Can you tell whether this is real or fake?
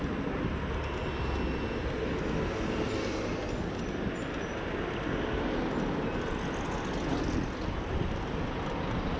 real